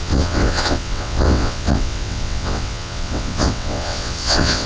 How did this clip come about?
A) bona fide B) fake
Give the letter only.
B